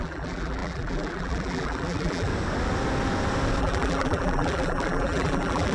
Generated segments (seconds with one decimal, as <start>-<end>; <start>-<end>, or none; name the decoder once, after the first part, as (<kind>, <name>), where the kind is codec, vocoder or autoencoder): 0.0-2.3 (vocoder, BigVGAN v2); 3.6-5.7